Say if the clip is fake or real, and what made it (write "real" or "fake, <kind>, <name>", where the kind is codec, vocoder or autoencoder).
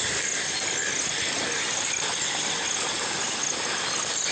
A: real